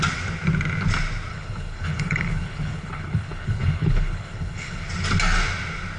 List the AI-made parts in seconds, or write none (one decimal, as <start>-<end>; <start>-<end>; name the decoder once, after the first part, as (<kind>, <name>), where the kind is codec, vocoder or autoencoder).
1.3-4.9 (codec, HILCodec)